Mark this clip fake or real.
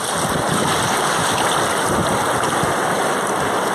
real